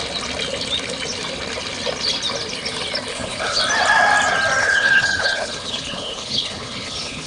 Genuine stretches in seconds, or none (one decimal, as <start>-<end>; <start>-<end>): 0.0-3.1; 3.6-4.6